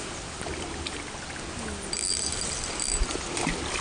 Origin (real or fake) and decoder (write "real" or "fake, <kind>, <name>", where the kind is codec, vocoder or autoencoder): real